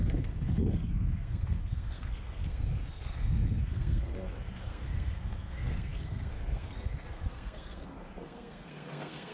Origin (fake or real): fake